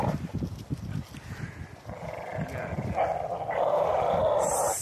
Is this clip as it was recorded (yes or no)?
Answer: yes